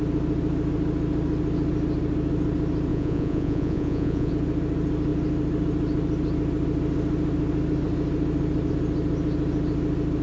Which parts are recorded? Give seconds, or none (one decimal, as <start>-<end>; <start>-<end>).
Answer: 0.0-2.9; 4.3-10.2